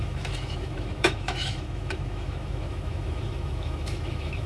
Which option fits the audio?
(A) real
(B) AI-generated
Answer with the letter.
B